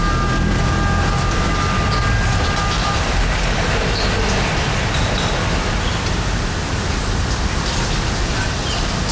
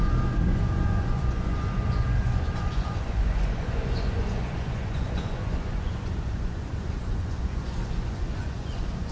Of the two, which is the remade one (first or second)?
second